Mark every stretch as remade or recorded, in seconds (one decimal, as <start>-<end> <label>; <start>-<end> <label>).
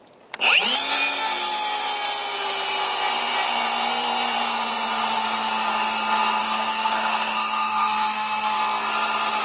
0.0-6.4 recorded; 6.4-8.6 remade; 8.6-9.4 recorded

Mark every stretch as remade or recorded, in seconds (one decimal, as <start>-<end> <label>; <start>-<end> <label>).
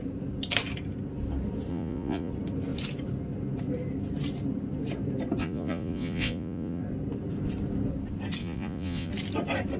0.0-1.7 recorded; 1.7-2.3 remade; 2.3-5.4 recorded; 5.4-6.8 remade; 6.8-8.4 recorded; 8.4-9.1 remade; 9.1-9.8 recorded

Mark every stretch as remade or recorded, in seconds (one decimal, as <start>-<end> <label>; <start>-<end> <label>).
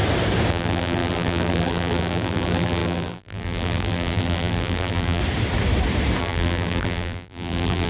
0.0-0.5 recorded; 0.5-5.2 remade; 5.2-6.2 recorded; 6.2-7.9 remade